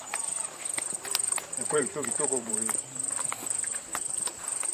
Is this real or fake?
fake